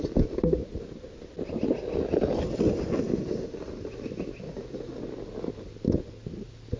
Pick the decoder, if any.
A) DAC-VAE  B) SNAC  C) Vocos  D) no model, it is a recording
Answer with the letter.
D